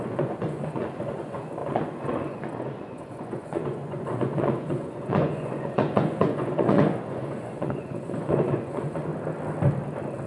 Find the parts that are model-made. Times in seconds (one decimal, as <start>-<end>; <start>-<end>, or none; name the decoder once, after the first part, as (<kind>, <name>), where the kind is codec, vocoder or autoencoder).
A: 0.0-9.1 (vocoder, Vocos)